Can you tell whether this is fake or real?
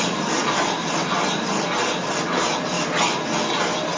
real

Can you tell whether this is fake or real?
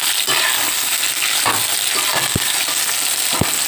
real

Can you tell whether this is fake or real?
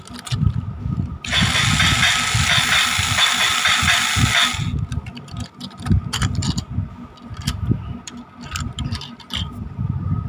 real